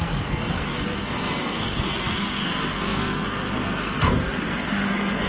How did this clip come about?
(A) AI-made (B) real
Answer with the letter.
A